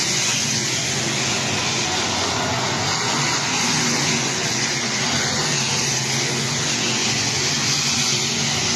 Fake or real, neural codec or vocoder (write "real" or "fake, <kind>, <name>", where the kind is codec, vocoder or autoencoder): fake, vocoder, Vocos